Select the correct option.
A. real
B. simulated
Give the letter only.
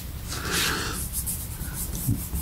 B